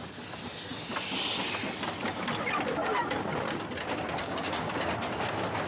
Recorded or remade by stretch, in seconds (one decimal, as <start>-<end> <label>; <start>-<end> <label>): 0.0-4.2 recorded; 4.2-4.7 remade; 4.7-5.7 recorded